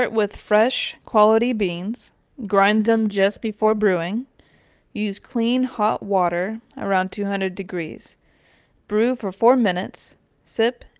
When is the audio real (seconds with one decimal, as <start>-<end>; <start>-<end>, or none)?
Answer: 0.0-2.8; 3.8-11.0